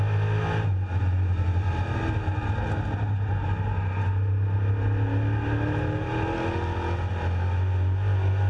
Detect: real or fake real